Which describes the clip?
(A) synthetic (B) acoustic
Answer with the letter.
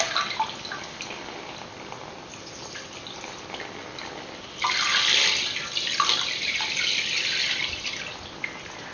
B